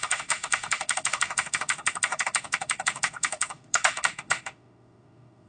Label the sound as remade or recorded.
remade